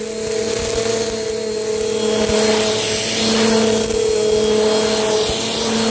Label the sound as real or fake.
real